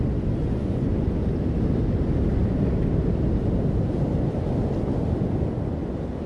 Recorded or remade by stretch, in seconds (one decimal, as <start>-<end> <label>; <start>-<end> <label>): 0.0-0.4 recorded; 0.4-0.9 remade; 0.9-6.3 recorded